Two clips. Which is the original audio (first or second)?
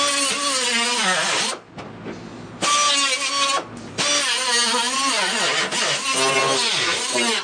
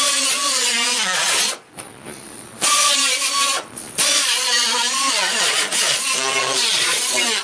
first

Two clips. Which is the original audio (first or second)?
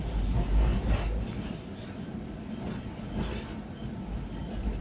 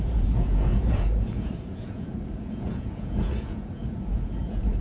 first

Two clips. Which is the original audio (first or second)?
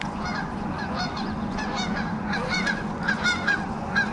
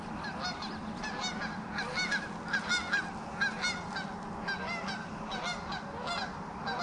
second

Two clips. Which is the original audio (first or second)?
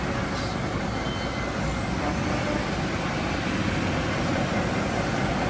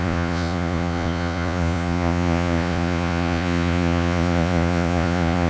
first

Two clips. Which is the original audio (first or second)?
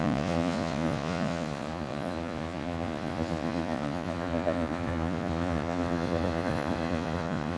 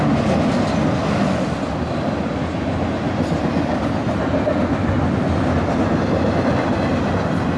second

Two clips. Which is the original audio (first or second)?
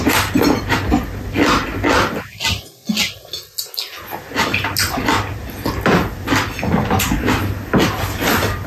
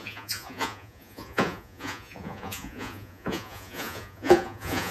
first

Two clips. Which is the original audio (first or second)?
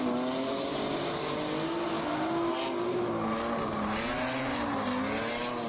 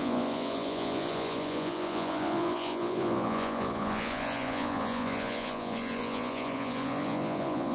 first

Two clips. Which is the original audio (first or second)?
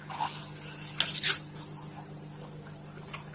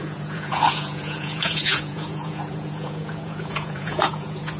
first